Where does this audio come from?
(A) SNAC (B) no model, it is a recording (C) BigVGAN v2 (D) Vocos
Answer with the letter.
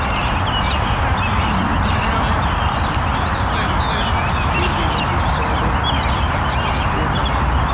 B